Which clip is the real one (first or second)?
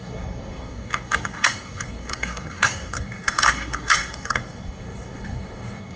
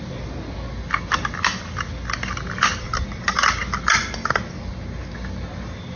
second